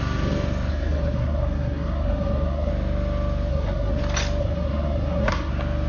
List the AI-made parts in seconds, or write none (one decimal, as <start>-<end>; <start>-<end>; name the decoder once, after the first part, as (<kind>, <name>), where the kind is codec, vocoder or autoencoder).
0.7-2.7 (codec, SNAC); 3.5-4.0; 4.4-5.5